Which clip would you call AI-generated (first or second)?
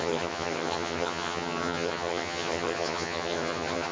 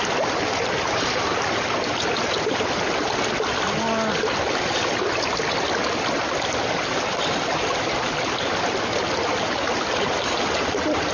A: first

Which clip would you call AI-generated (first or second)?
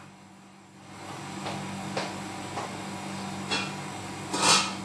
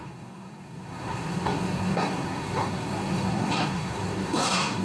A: second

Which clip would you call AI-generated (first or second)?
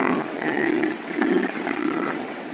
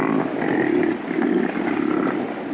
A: first